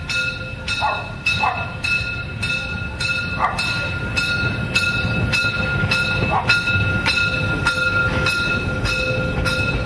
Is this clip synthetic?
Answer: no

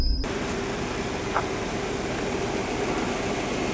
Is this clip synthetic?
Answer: no